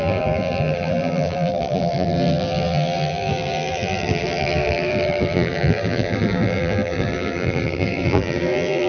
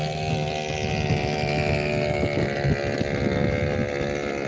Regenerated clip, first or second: first